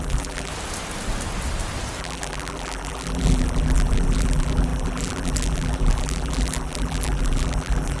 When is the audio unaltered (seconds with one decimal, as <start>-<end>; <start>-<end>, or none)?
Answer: 0.5-2.0